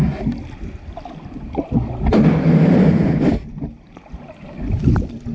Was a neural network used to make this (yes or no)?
no